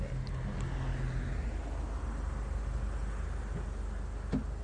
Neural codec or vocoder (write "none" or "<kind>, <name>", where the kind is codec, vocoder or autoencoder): none